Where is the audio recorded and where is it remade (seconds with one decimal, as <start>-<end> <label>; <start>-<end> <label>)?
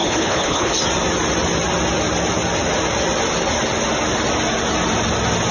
0.0-0.7 remade; 0.7-5.5 recorded